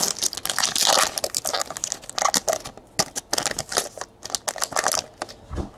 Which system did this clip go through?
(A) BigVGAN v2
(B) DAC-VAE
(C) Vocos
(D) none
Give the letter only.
D